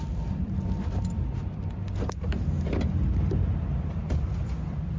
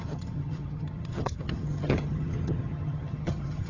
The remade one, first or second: second